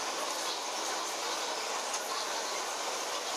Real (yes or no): yes